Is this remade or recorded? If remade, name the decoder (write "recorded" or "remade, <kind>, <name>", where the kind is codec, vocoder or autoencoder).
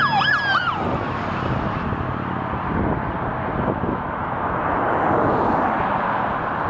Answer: recorded